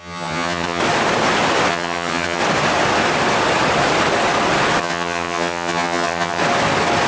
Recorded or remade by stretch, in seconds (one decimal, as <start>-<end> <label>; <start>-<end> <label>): 0.0-0.8 remade; 0.8-1.7 recorded; 1.7-2.4 remade; 2.4-4.8 recorded; 4.8-6.4 remade; 6.4-7.1 recorded